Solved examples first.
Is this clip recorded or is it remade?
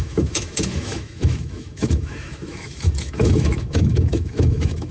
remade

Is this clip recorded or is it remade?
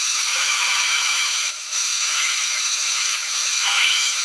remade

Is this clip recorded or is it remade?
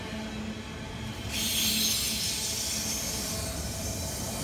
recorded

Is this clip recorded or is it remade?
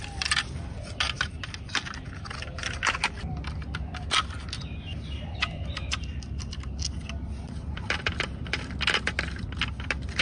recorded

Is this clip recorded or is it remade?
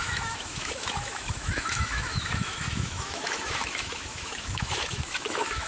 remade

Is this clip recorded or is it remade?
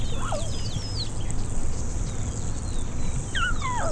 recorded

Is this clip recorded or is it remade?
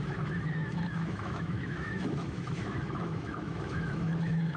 remade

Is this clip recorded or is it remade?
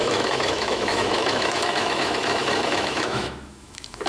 remade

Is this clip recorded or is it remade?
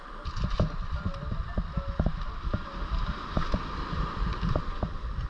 recorded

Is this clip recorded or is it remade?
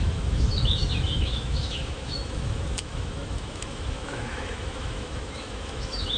remade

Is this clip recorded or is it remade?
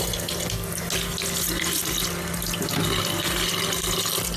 recorded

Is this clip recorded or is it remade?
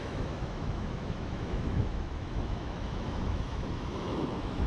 remade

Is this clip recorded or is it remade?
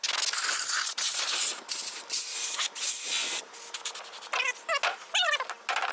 recorded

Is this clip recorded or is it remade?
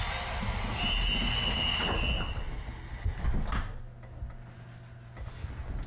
recorded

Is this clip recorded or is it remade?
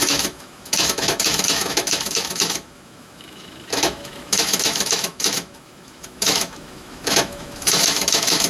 remade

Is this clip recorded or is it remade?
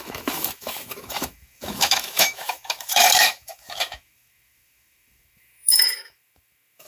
remade